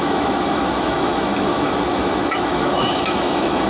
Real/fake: fake